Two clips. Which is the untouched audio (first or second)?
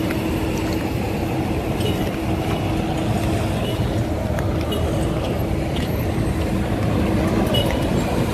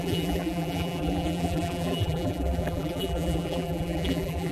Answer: first